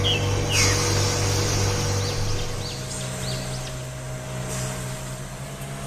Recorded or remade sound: recorded